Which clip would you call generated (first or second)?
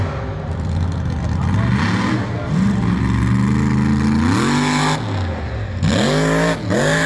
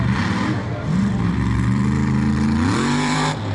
second